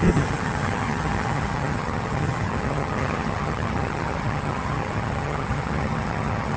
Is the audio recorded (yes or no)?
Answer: no